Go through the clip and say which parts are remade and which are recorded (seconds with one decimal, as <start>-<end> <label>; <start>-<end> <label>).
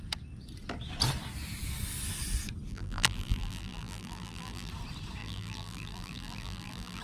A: 0.0-2.7 recorded; 2.7-4.7 remade; 4.7-5.2 recorded; 5.2-7.0 remade